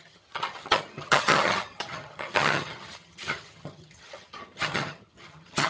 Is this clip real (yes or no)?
no